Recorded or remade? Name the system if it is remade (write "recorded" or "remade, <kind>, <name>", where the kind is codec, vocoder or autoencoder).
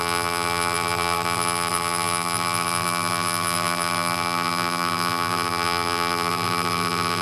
remade, vocoder, BigVGAN v2